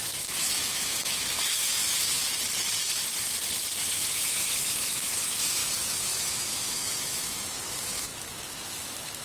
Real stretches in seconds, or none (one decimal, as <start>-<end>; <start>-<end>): 2.2-3.8